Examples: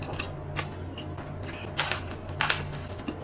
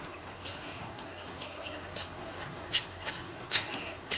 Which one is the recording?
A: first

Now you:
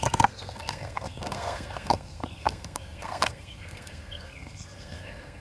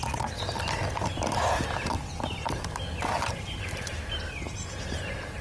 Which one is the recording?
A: second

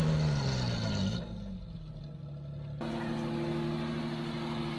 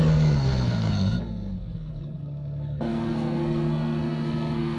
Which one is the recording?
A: first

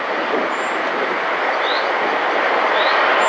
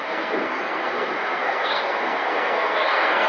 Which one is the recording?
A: first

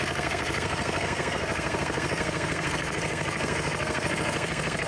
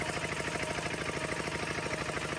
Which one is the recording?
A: second